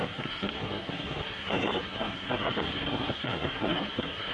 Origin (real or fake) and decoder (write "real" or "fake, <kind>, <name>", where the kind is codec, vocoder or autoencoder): fake, codec, SNAC